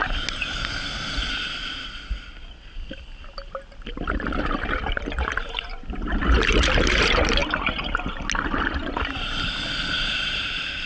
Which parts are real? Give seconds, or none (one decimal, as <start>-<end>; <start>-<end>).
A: 0.0-10.9